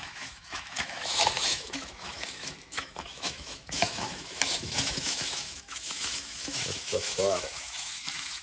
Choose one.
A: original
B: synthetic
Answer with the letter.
B